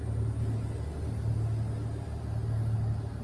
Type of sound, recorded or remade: recorded